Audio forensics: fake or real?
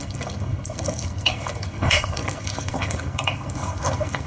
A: fake